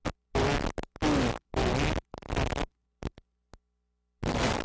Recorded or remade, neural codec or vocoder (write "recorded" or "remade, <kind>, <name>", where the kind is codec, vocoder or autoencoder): recorded